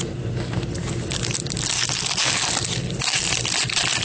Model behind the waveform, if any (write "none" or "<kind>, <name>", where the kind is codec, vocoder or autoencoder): none